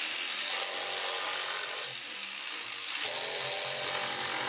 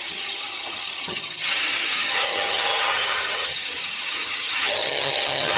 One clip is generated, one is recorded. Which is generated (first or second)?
second